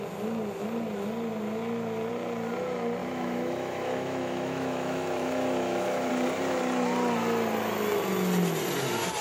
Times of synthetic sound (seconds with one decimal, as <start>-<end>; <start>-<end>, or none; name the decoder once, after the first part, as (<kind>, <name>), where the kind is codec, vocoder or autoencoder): 3.0-6.1 (autoencoder, DAC-VAE)